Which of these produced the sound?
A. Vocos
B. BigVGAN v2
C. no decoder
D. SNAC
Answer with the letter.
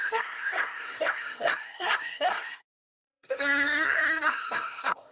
D